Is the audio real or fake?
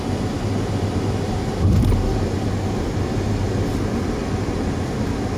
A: real